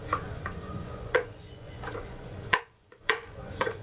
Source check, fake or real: fake